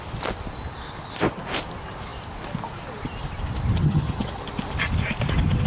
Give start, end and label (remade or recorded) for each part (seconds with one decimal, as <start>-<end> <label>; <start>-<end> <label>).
0.0-3.8 recorded; 3.8-4.4 remade; 4.4-5.7 recorded